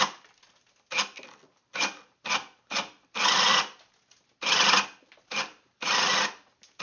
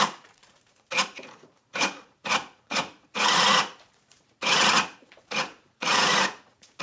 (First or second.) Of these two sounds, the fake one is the second